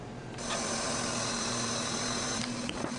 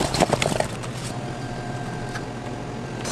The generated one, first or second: first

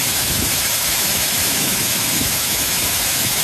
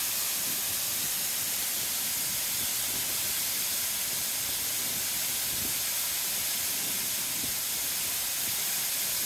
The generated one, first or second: first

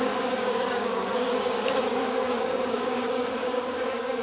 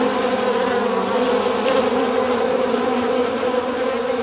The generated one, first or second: first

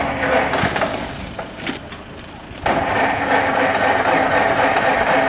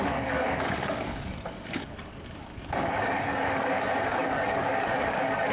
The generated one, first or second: second